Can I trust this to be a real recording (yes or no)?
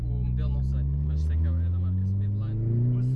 yes